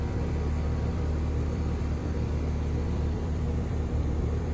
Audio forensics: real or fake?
fake